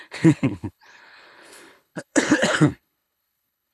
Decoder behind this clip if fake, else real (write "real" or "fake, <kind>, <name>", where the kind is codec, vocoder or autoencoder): fake, codec, HILCodec